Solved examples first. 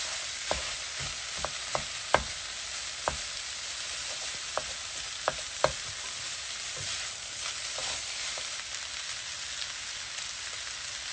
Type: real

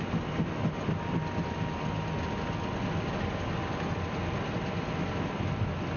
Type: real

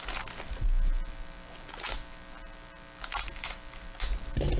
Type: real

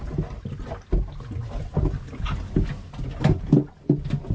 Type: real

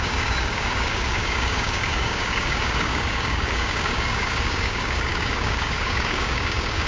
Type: fake